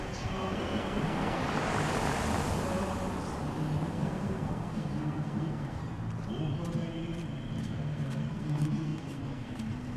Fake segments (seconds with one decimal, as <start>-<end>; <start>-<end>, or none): 0.0-1.4; 3.9-5.8; 7.6-10.0